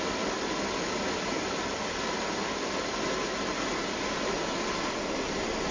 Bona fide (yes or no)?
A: yes